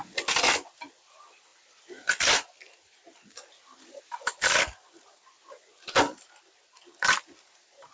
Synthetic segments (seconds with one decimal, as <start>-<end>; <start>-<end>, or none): none